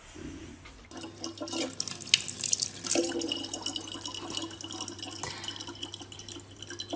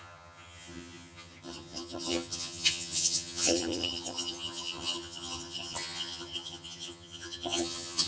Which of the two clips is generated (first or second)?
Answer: second